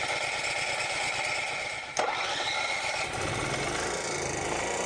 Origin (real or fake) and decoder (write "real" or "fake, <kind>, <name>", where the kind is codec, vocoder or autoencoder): real